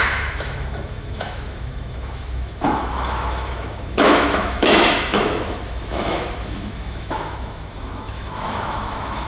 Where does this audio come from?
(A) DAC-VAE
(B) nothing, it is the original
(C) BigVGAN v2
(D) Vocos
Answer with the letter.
A